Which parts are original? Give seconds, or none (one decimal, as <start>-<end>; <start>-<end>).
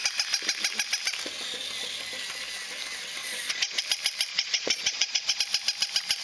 0.0-3.2; 3.8-4.3; 5.4-6.2